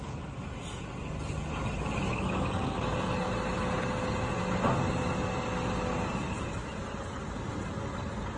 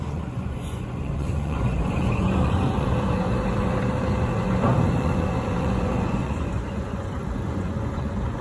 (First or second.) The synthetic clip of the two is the second